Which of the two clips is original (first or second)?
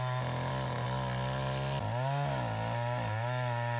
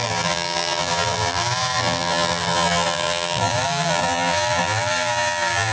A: first